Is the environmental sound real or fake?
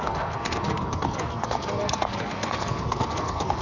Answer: fake